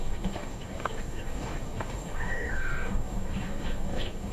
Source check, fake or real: fake